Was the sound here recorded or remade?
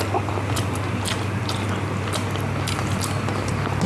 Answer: recorded